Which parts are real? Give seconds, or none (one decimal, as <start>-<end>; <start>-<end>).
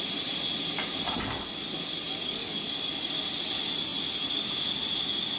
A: 0.0-2.1; 3.1-5.4